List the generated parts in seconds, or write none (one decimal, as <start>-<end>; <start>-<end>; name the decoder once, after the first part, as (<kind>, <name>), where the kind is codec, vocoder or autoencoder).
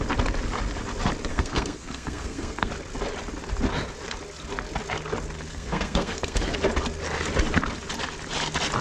1.3-2.7 (codec, SNAC); 5.5-6.4